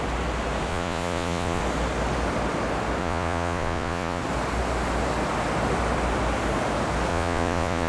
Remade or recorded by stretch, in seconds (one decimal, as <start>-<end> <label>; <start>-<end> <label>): 0.0-0.7 recorded; 0.7-1.6 remade; 1.6-3.0 recorded; 3.0-4.2 remade; 4.2-7.1 recorded; 7.1-7.9 remade